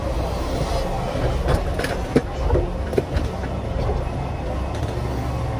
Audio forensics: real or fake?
real